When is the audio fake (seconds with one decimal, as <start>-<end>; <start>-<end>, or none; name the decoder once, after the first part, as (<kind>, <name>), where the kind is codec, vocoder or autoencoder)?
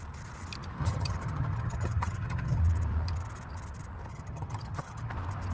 0.8-2.6 (vocoder, HiFi-GAN); 4.1-5.1